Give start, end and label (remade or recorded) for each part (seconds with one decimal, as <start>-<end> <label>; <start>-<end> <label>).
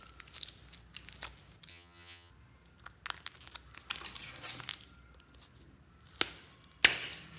0.0-1.7 recorded; 1.7-2.3 remade; 2.3-7.4 recorded